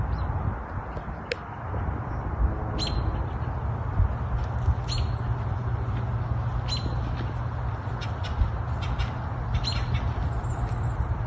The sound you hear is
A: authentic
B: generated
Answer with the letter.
A